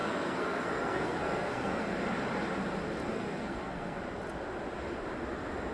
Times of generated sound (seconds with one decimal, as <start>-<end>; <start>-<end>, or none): 0.0-2.0; 3.1-4.0